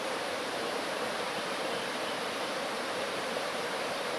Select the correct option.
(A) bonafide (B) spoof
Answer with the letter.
B